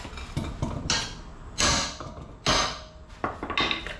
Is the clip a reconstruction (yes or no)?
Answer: no